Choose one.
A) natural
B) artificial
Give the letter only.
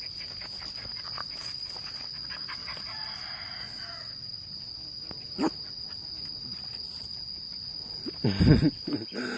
A